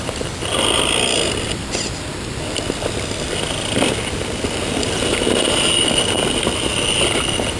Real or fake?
real